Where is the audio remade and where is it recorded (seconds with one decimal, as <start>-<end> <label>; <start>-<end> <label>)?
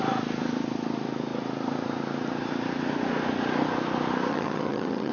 0.0-4.3 recorded; 4.3-5.1 remade